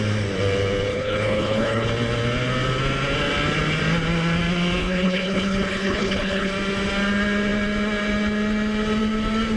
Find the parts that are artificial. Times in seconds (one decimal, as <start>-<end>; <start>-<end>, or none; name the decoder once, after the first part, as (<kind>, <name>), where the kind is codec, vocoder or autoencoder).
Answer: 0.9-1.9 (codec, HILCodec); 4.8-6.5